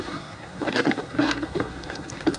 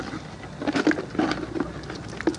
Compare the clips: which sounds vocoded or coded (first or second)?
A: first